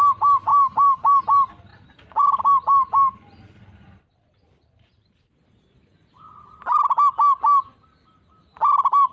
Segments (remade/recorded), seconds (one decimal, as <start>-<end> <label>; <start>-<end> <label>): 0.0-0.5 recorded; 0.5-1.2 remade; 1.2-9.1 recorded